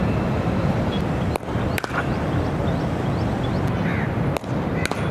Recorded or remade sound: recorded